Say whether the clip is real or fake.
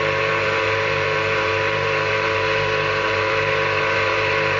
fake